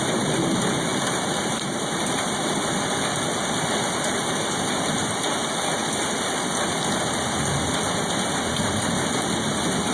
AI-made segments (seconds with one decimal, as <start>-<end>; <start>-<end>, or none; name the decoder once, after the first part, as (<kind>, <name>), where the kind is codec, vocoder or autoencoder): none